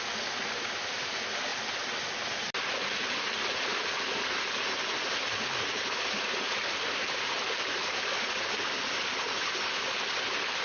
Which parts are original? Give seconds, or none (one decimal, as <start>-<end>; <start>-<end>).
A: 0.0-10.6